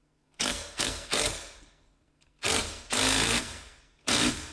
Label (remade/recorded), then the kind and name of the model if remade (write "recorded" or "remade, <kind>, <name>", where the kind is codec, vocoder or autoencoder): remade, codec, SNAC